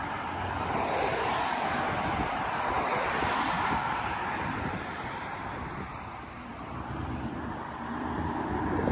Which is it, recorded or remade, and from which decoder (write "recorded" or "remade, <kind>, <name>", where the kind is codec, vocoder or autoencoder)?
remade, vocoder, BigVGAN v2